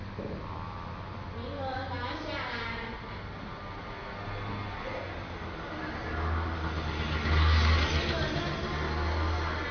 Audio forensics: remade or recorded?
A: recorded